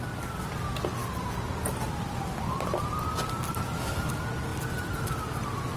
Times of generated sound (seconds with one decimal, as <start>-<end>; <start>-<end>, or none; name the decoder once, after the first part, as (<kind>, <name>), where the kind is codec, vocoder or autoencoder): none